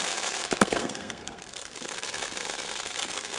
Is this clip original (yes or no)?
no